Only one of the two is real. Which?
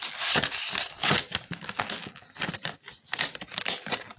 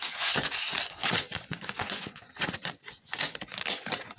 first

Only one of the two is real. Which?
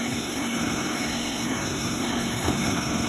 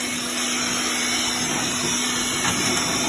second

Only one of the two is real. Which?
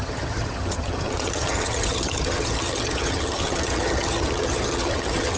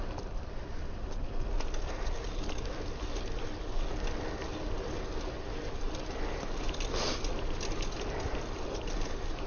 second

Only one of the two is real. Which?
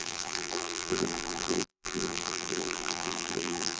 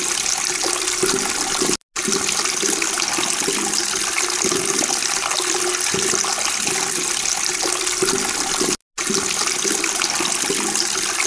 second